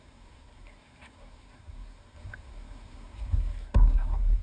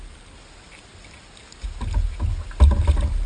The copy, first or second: first